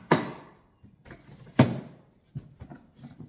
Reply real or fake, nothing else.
fake